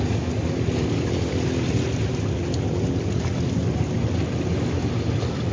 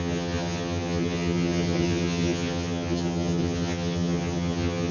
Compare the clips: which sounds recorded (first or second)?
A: first